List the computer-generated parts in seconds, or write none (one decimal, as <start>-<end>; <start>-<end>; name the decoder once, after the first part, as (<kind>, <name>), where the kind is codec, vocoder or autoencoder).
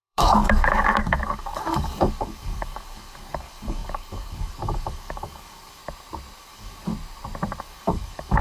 0.0-5.8 (codec, DAC); 6.4-6.9; 7.6-8.4